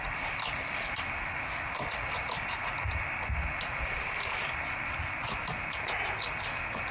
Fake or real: real